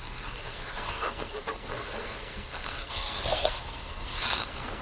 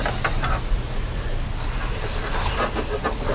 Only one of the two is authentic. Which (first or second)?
second